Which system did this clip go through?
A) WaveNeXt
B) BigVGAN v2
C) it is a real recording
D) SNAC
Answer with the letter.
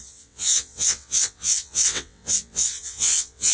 A